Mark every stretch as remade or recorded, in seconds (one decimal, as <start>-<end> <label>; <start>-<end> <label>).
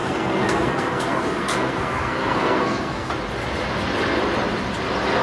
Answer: 0.0-3.1 remade; 3.1-5.2 recorded